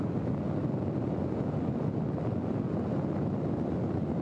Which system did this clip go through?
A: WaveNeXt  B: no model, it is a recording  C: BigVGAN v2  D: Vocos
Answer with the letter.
B